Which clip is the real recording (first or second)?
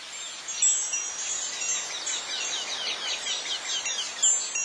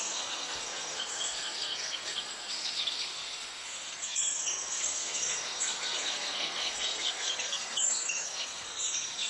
first